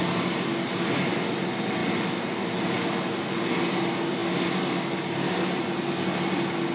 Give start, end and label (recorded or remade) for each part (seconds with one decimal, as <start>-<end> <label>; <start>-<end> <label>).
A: 0.0-6.7 recorded